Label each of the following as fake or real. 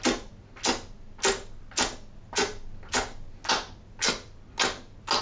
real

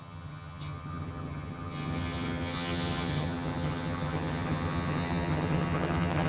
fake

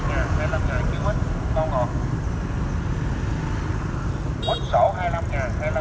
real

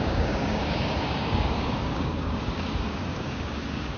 fake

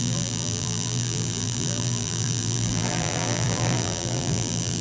fake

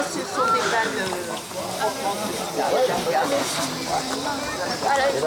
real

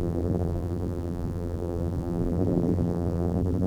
fake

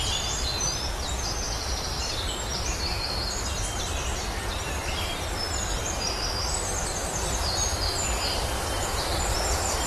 fake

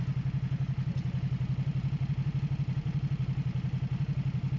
real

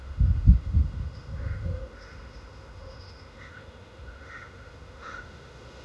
fake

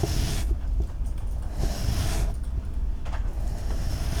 real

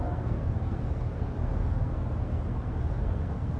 fake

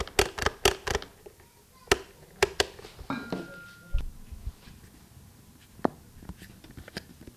real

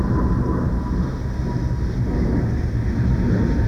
real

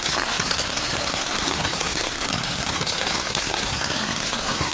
fake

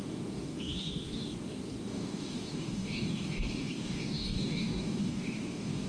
fake